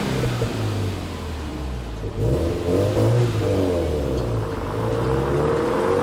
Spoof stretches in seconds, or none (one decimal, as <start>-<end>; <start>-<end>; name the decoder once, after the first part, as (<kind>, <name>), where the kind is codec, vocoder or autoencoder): none